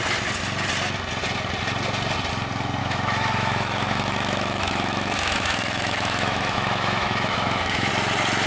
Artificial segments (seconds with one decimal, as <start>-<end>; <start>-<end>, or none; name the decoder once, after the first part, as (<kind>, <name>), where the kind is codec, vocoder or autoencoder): 2.8-7.9 (autoencoder, DAC-VAE)